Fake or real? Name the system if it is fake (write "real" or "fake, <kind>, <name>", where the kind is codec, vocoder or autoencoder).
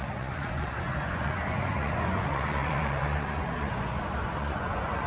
fake, vocoder, Vocos